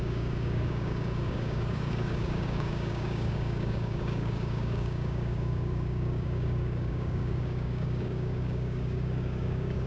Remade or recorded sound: remade